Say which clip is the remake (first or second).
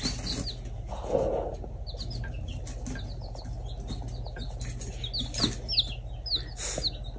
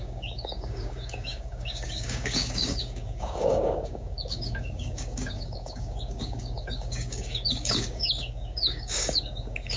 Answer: second